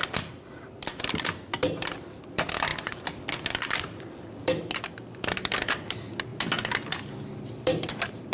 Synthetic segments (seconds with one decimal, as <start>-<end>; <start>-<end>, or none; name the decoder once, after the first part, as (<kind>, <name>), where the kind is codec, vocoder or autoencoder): none